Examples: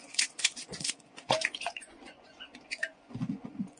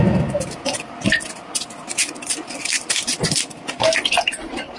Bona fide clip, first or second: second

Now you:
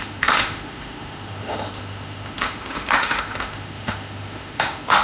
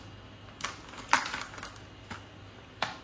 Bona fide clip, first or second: second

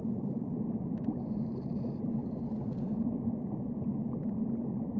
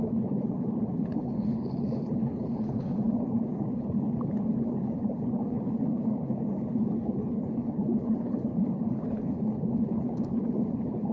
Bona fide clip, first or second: first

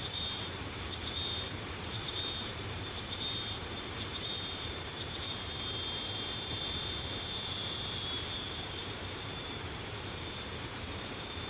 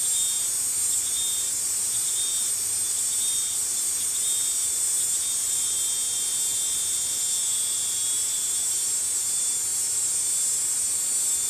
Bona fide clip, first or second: second